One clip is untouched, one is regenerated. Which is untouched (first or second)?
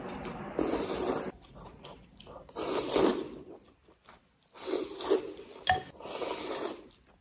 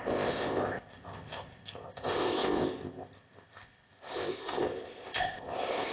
first